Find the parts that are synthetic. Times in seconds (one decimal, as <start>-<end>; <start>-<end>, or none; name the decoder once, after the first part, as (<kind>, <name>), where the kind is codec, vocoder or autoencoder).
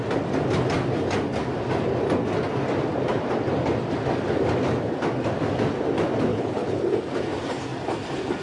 6.3-6.8 (codec, HILCodec)